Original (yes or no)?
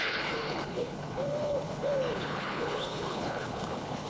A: no